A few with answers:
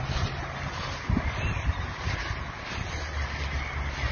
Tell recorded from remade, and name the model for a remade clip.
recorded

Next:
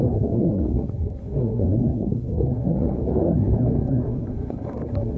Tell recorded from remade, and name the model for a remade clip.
remade, codec, SNAC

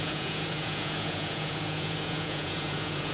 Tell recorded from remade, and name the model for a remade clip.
remade, vocoder, Vocos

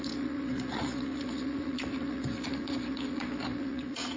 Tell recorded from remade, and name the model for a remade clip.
remade, vocoder, Vocos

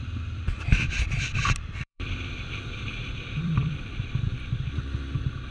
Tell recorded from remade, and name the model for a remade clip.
remade, vocoder, BigVGAN v2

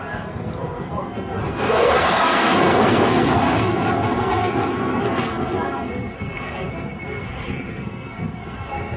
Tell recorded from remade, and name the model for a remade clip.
remade, codec, SNAC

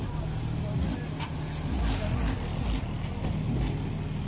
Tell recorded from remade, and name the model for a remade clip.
recorded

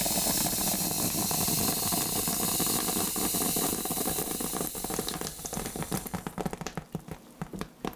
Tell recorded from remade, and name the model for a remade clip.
recorded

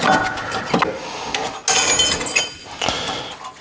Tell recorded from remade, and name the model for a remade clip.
recorded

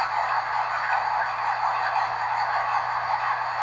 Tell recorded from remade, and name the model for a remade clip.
recorded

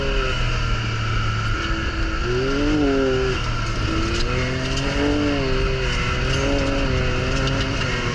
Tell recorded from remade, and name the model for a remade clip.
recorded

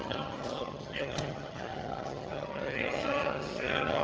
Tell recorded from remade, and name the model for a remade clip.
remade, vocoder, HiFi-GAN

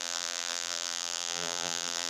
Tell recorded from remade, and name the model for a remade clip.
remade, vocoder, BigVGAN v2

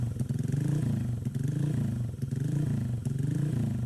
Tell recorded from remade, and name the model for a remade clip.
recorded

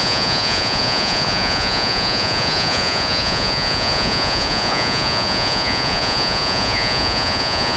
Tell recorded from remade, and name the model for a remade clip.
remade, vocoder, Vocos